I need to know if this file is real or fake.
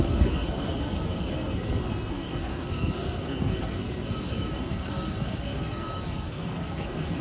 fake